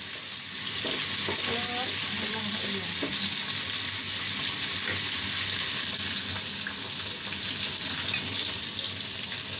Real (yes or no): yes